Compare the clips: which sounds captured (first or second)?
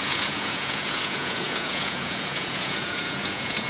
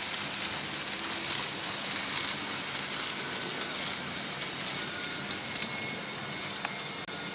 second